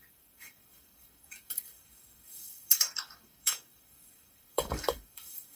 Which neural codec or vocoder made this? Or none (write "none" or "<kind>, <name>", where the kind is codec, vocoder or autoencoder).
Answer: codec, DAC